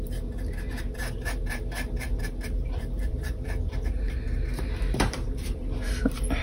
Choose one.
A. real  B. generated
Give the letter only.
B